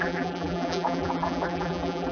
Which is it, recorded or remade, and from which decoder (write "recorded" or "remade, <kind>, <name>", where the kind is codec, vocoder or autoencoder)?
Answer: remade, vocoder, BigVGAN v2